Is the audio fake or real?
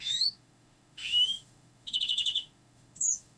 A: fake